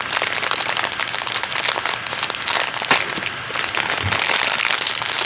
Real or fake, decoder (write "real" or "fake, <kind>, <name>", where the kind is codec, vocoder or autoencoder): real